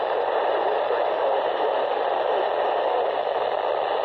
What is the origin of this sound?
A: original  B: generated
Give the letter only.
A